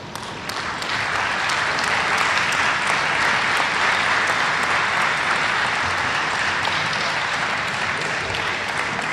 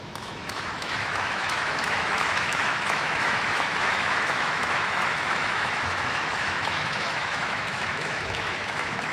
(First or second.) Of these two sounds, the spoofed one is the second